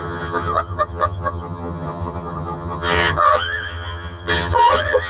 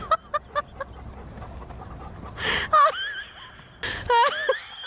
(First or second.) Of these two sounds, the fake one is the first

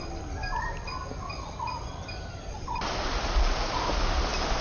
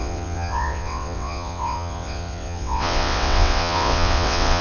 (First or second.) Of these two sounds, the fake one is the second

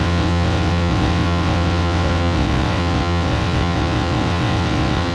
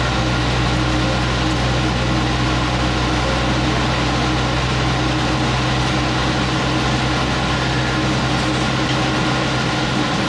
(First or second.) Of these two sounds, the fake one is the first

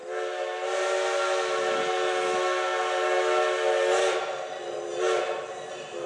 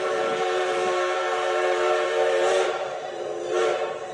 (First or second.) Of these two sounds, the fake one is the second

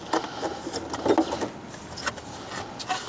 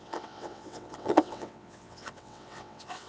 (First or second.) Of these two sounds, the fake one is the second